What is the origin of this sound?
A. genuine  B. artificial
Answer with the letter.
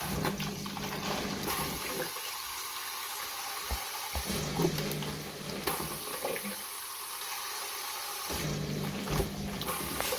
A